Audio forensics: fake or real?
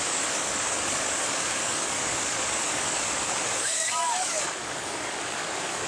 fake